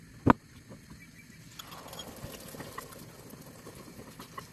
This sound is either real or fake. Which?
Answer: real